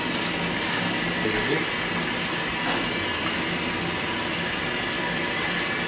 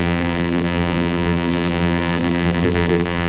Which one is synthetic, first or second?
second